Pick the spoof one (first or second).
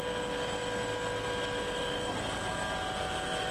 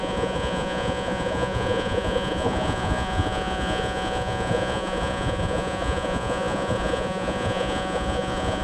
second